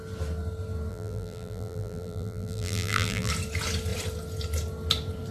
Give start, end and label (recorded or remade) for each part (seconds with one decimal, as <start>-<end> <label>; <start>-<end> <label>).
0.0-0.9 recorded; 0.9-3.3 remade; 3.3-5.3 recorded